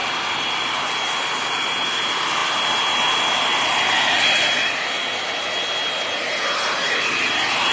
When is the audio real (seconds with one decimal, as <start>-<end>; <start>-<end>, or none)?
0.8-7.7